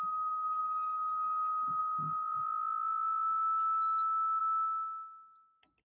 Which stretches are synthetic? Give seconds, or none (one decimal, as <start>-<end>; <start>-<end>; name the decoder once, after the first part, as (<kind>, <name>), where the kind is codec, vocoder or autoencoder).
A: none